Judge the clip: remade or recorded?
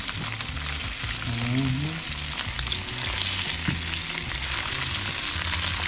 recorded